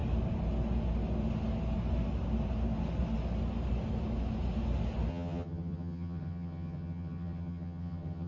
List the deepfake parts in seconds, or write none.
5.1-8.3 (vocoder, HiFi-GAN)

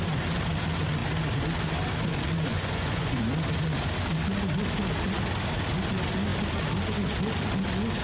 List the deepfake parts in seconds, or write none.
2.5-3.2 (vocoder, Vocos)

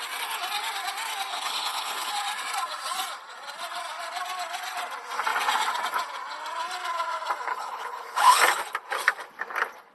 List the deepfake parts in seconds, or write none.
1.3-2.1 (codec, HILCodec); 7.5-8.4